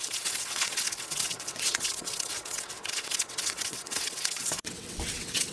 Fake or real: fake